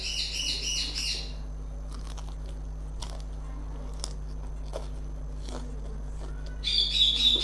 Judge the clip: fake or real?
real